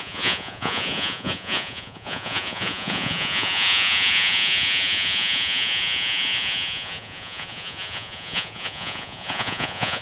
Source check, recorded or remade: remade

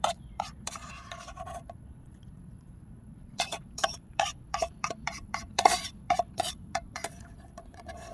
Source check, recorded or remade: remade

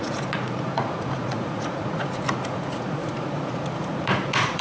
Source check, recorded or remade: remade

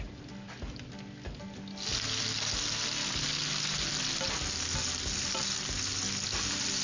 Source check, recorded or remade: recorded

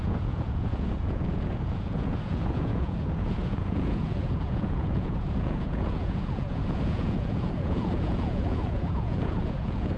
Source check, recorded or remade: remade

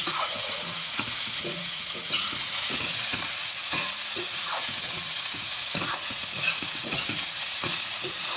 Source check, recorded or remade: remade